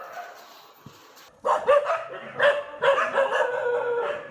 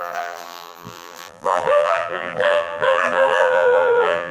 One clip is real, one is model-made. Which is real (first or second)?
first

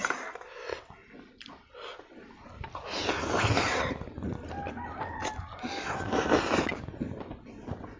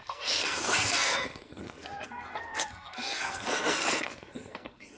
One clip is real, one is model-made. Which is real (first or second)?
first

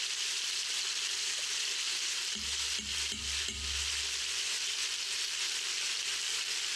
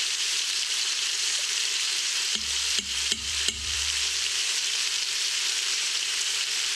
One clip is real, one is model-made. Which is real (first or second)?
first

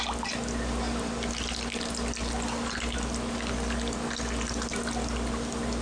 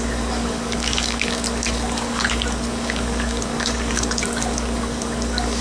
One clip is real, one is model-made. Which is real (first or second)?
first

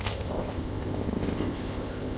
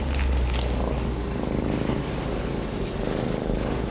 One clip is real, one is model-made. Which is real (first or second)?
second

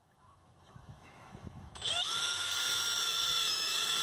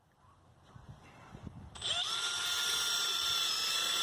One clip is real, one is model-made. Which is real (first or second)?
second